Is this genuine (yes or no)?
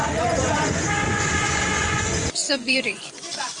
no